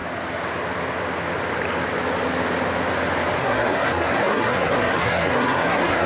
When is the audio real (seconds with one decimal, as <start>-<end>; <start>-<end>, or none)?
0.0-3.4